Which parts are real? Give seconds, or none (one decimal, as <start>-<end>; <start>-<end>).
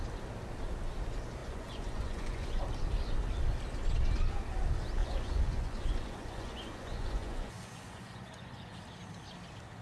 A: 0.0-1.4; 2.6-5.0; 8.8-9.8